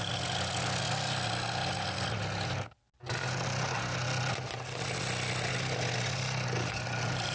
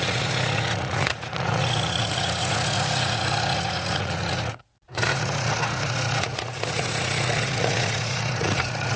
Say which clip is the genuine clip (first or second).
first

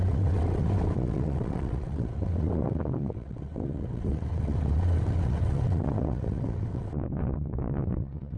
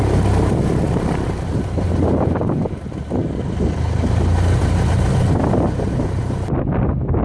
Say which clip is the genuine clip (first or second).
second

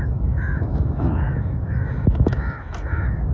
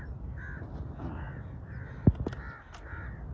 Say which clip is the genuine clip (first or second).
second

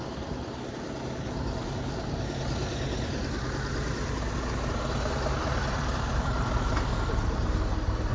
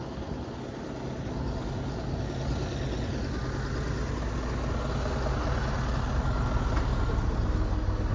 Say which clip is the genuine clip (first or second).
second